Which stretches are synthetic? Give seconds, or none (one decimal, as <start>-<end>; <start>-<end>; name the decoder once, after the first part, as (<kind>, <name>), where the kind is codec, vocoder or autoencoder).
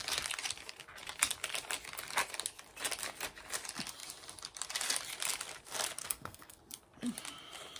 6.0-6.6 (codec, SNAC)